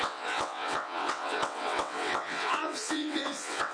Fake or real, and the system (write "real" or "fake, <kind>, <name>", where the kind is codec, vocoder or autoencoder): fake, vocoder, WaveNeXt